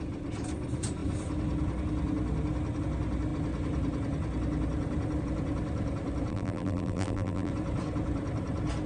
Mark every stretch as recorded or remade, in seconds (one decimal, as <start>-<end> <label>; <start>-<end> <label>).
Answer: 0.0-6.3 recorded; 6.3-7.5 remade; 7.5-8.9 recorded

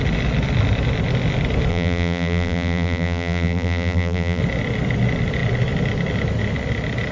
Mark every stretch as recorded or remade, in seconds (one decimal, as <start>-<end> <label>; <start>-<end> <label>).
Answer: 0.0-1.7 recorded; 1.7-4.4 remade; 4.4-7.1 recorded

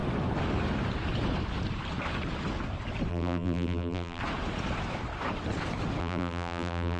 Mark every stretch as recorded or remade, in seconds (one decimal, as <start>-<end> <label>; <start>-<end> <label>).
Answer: 0.0-3.1 recorded; 3.1-4.2 remade; 4.2-6.0 recorded; 6.0-7.0 remade

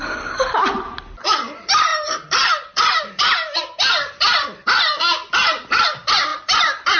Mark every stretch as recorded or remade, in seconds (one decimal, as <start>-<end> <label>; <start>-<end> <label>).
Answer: 0.0-7.0 remade

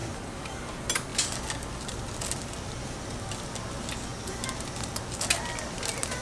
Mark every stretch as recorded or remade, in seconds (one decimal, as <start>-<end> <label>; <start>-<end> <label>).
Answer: 0.0-0.7 remade; 0.7-6.2 recorded

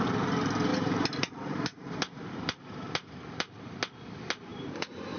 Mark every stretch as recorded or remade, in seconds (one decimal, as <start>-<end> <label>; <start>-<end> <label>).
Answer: 0.0-0.7 recorded; 0.7-3.8 remade; 3.8-4.5 recorded; 4.5-5.2 remade